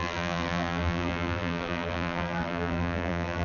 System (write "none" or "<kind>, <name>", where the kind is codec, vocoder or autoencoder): vocoder, BigVGAN v2